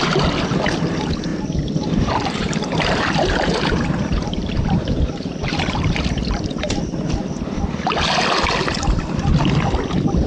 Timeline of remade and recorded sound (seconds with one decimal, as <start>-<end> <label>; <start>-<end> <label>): 0.0-1.3 recorded; 1.3-6.3 remade; 6.3-10.3 recorded